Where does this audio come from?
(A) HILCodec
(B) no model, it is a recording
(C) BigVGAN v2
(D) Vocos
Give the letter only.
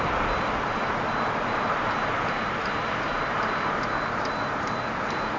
C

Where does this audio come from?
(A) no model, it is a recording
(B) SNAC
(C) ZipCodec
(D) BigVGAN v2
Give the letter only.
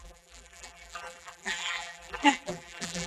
D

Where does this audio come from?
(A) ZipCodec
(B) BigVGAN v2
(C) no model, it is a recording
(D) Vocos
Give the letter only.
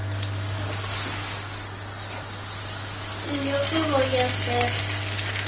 C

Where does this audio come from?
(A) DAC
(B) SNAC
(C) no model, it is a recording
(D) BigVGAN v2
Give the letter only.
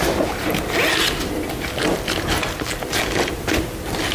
C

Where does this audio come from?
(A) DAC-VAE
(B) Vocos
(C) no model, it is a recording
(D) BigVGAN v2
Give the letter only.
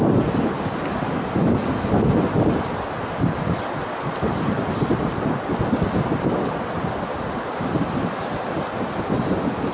C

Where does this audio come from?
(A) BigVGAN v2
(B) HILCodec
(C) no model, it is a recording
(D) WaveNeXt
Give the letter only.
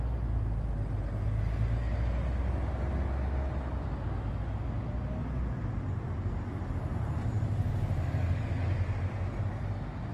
C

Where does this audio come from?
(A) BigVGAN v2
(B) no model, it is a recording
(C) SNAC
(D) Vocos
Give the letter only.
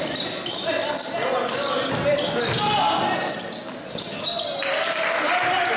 B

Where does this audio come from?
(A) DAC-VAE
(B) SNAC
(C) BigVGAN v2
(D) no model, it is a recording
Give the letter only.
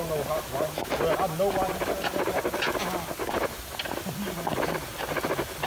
D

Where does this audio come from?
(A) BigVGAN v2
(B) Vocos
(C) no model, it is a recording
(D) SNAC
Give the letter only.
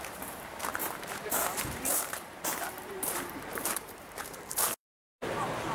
A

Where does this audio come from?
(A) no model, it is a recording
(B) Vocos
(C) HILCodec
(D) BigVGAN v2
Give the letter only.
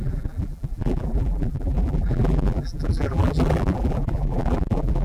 D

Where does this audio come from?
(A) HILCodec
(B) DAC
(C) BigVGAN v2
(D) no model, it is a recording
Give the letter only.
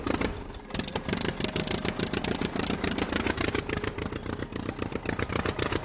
C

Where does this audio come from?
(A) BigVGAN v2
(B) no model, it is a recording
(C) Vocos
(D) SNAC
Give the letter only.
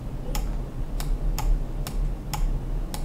B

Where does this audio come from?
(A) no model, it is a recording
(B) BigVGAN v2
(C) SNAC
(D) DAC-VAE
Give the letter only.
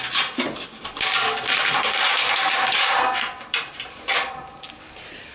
B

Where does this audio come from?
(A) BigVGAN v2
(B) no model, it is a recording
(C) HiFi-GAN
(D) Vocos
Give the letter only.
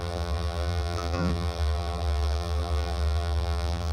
A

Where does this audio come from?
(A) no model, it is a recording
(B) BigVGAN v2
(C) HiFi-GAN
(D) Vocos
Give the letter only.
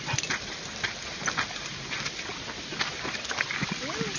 A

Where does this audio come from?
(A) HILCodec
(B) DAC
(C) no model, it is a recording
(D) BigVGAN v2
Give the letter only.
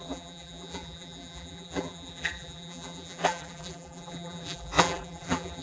D